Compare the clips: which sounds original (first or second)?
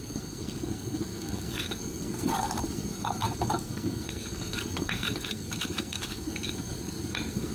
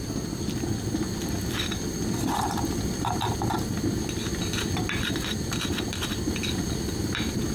second